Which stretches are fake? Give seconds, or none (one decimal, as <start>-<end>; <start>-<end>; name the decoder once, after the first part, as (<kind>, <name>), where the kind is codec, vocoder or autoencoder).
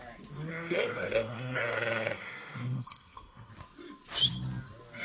0.5-3.5 (codec, SNAC)